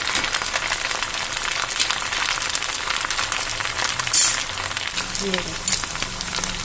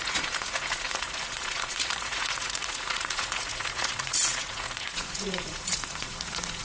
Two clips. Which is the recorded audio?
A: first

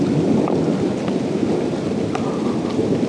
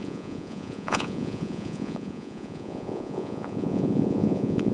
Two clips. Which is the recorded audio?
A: first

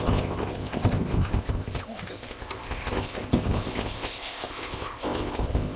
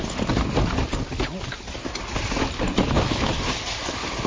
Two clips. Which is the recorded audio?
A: second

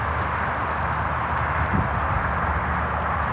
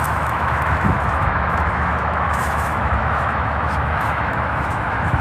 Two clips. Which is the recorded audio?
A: first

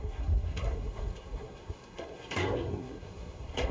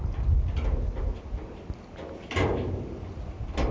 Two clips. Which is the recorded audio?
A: second